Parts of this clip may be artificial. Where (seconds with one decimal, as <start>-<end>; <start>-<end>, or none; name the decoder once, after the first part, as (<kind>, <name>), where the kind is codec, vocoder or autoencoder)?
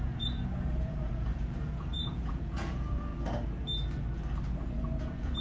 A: 0.0-3.1 (vocoder, Vocos); 5.0-5.4